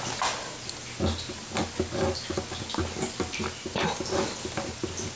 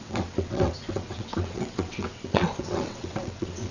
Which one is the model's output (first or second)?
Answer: second